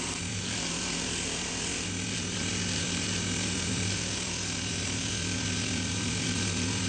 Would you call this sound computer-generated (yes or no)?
yes